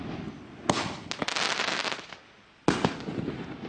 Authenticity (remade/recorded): recorded